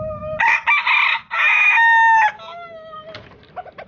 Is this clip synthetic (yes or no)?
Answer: no